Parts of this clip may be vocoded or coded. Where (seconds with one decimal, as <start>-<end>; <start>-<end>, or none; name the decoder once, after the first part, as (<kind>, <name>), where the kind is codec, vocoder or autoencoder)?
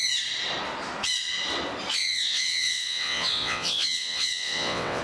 2.1-5.0 (vocoder, WaveNeXt)